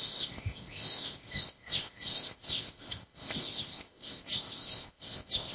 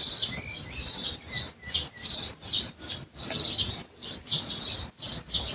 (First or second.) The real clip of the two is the second